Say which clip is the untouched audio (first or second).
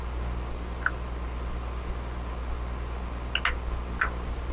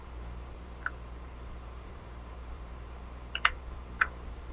first